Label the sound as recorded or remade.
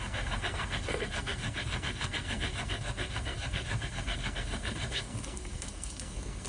remade